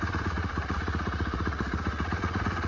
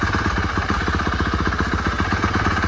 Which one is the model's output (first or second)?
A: first